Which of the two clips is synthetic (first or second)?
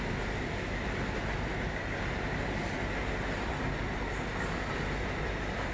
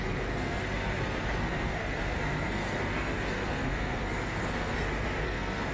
second